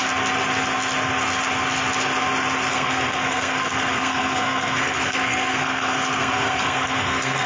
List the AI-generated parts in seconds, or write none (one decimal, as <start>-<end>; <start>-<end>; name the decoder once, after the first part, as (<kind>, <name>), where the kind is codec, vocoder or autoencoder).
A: 2.7-7.5 (codec, SNAC)